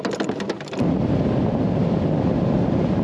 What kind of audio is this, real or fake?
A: real